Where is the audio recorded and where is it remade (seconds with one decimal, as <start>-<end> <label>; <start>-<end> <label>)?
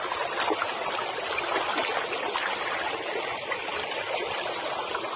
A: 0.0-5.2 recorded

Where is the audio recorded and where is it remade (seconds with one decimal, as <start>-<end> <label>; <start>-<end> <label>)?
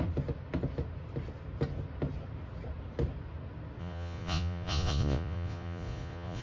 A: 0.0-3.8 recorded; 3.8-6.4 remade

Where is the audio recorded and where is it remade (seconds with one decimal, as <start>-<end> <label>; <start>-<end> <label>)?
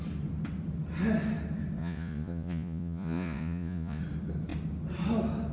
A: 0.0-1.8 recorded; 1.8-4.0 remade; 4.0-5.5 recorded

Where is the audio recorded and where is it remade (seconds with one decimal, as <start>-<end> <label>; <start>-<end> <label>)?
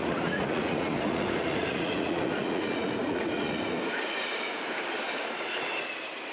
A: 0.0-3.8 remade; 3.8-6.3 recorded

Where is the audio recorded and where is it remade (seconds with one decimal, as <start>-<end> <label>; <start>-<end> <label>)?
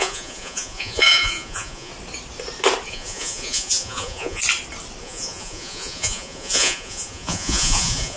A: 0.0-1.9 remade; 1.9-2.9 recorded; 2.9-4.4 remade; 4.4-5.0 recorded; 5.0-8.2 remade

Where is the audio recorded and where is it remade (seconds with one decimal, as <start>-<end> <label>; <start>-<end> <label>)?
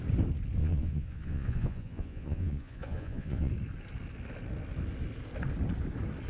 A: 0.0-0.6 recorded; 0.6-3.5 remade; 3.5-6.3 recorded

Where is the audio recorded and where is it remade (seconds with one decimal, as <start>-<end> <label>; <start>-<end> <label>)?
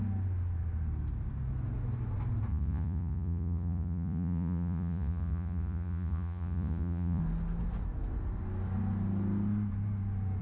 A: 0.0-2.5 recorded; 2.5-7.2 remade; 7.2-10.4 recorded